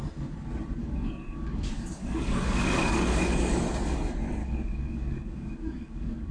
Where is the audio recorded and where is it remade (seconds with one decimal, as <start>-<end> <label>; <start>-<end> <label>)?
0.0-0.8 recorded; 0.8-3.6 remade; 3.6-4.4 recorded; 4.4-6.3 remade